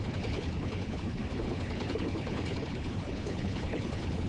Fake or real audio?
fake